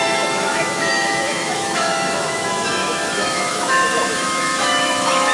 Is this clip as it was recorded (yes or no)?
no